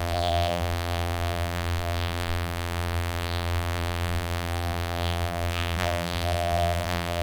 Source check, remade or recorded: remade